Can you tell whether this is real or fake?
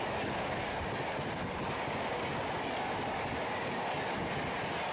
real